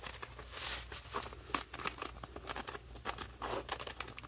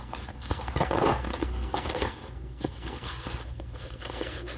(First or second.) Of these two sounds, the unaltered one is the first